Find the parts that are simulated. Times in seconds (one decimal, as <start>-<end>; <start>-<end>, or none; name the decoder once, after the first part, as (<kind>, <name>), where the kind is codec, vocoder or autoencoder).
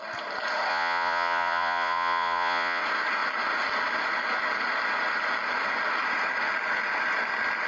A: 0.7-2.8 (vocoder, Vocos)